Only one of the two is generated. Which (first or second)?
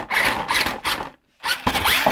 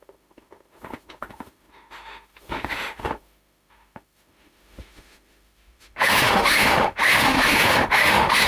second